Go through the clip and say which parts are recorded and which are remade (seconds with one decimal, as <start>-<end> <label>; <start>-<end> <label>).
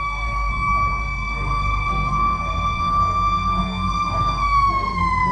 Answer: 0.0-0.5 remade; 0.5-1.0 recorded; 1.0-5.3 remade